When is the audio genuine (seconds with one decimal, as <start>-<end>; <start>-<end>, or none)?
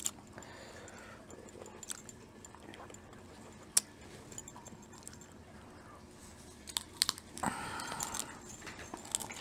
0.0-9.4